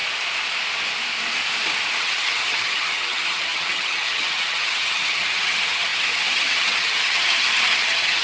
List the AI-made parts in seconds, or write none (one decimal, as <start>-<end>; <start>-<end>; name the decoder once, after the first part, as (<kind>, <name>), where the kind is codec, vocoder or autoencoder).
2.0-8.2 (vocoder, HiFi-GAN)